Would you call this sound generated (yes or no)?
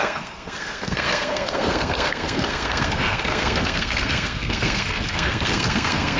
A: yes